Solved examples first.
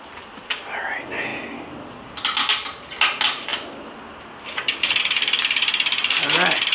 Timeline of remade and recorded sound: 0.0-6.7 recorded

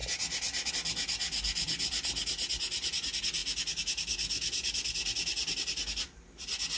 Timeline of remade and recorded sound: 0.0-6.8 recorded